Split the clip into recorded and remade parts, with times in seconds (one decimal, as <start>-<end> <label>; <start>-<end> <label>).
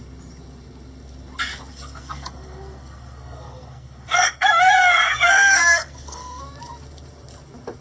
0.0-1.7 recorded; 1.7-6.4 remade; 6.4-7.8 recorded